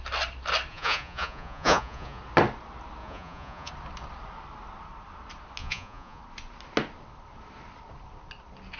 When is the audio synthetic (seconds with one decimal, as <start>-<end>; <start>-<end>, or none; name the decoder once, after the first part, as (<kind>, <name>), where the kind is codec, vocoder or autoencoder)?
0.7-2.2 (vocoder, Vocos); 3.0-3.7; 5.6-6.2